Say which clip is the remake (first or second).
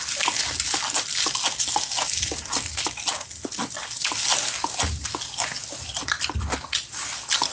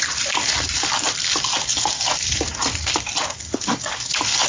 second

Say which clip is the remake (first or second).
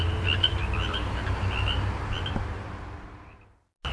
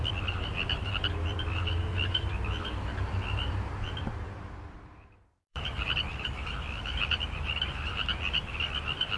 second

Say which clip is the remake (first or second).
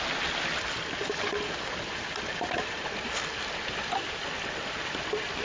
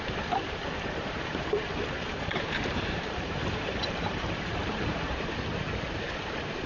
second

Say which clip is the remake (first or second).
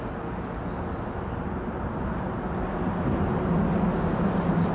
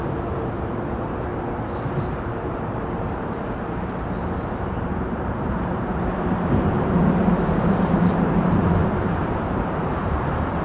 second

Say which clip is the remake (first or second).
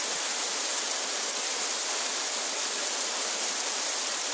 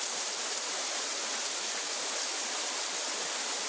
second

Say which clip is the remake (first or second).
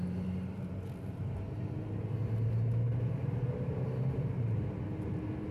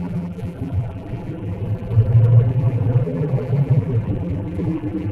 second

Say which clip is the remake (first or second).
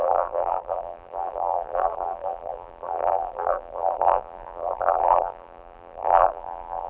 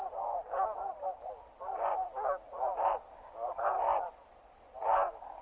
first